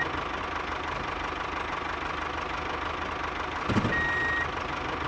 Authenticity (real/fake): real